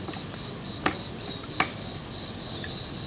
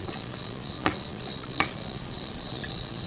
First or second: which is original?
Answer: first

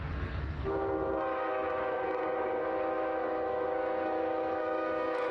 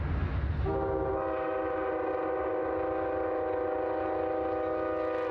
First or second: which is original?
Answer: second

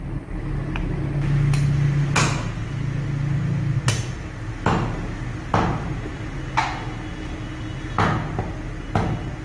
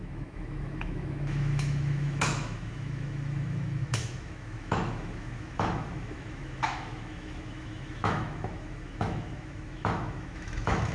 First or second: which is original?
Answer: first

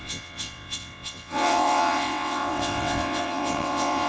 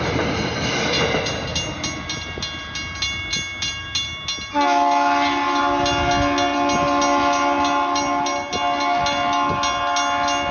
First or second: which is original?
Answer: second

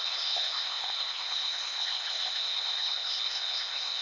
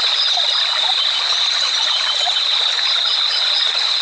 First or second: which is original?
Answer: second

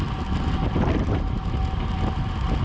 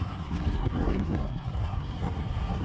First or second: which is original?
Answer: first